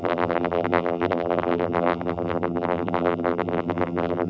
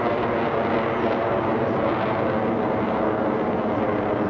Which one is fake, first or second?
first